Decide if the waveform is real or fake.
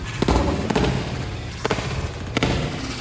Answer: real